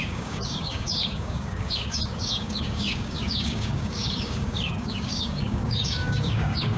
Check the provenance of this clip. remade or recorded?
remade